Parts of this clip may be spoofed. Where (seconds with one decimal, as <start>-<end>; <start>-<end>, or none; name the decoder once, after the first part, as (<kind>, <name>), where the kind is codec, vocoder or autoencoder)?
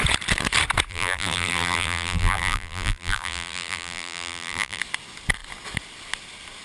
0.9-4.8 (vocoder, BigVGAN v2)